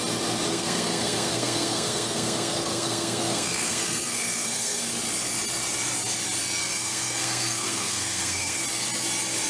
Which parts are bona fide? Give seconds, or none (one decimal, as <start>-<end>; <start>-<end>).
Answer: 0.0-0.5; 4.9-6.6; 8.6-9.5